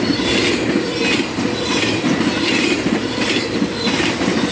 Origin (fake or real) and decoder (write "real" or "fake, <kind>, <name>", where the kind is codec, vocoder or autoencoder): real